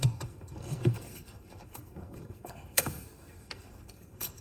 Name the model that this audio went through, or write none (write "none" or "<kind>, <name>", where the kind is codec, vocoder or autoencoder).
codec, SNAC